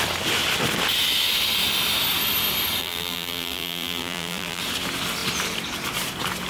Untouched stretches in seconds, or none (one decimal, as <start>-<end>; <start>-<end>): 0.0-2.8; 4.6-6.5